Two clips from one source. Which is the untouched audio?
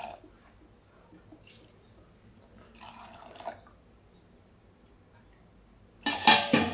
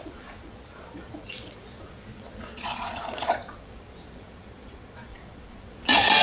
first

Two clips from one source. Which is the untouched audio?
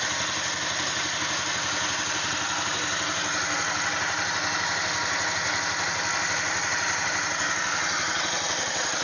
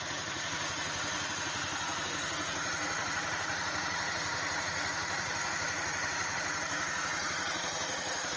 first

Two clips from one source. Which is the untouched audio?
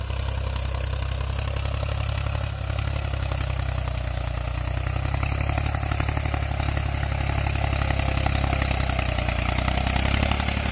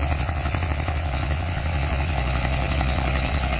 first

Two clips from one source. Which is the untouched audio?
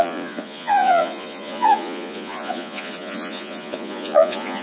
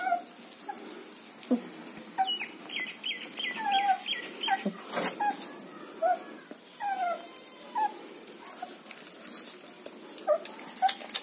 second